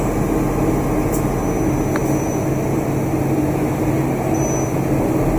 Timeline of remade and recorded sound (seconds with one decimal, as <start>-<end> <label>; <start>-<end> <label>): 0.0-5.4 recorded